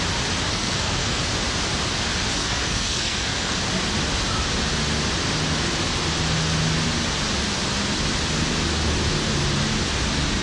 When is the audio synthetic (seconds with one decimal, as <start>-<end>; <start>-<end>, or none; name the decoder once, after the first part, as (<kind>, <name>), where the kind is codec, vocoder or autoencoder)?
0.5-1.2 (codec, SNAC); 2.4-3.6